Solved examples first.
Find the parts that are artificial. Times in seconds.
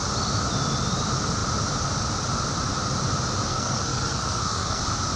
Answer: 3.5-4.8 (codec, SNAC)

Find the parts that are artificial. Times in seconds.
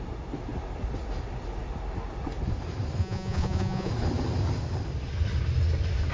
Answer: 3.0-3.9 (vocoder, Vocos)